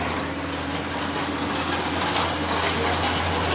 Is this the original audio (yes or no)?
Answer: yes